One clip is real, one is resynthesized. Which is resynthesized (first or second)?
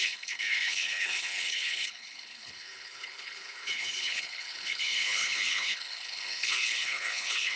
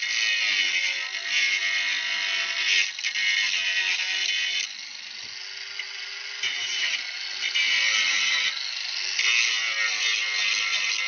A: first